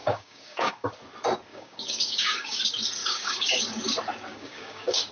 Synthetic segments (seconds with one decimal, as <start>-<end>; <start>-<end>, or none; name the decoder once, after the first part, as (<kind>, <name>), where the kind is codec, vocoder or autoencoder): 0.0-0.9 (codec, DAC); 1.5-2.6; 3.0-3.6; 4.3-5.1